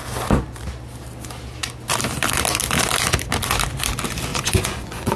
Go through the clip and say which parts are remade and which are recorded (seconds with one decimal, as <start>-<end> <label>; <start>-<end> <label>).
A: 0.0-4.3 recorded; 4.3-5.2 remade